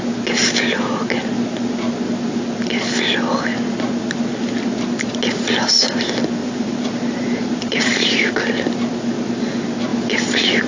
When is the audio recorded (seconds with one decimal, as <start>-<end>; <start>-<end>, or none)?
0.0-6.4; 8.3-10.7